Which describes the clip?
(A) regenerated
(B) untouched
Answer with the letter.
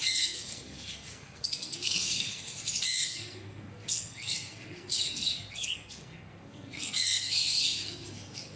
A